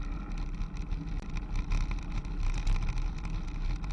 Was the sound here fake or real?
real